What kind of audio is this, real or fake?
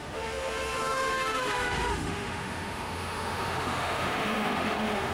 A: fake